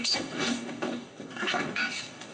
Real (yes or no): no